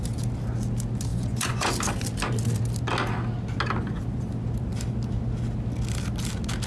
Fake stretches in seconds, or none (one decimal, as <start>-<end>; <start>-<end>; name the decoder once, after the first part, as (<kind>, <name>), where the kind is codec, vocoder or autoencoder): 1.1-1.7 (vocoder, Vocos)